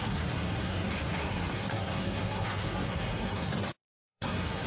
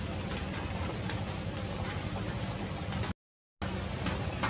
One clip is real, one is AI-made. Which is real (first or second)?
second